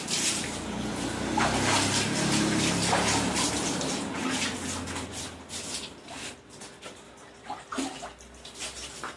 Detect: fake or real real